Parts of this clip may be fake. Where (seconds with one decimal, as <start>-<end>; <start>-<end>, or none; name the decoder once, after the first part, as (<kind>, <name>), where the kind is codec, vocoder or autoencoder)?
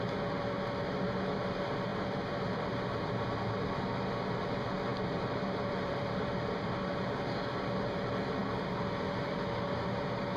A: 1.9-2.7 (vocoder, BigVGAN v2); 4.9-6.9